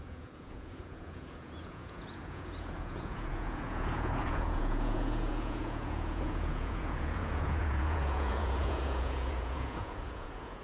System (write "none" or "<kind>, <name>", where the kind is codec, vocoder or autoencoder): vocoder, Vocos